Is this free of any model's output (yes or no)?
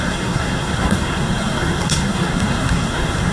no